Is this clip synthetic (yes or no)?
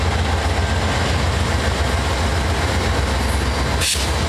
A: no